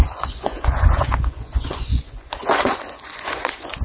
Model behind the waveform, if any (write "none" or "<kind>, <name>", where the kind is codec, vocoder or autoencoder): vocoder, Vocos